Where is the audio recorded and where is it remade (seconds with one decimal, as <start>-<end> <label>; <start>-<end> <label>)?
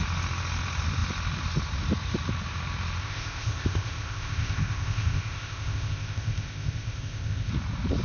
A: 0.0-3.0 recorded; 3.0-7.5 remade; 7.5-8.0 recorded